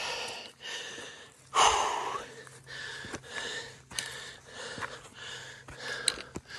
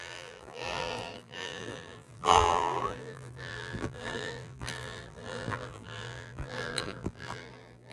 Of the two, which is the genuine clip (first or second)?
first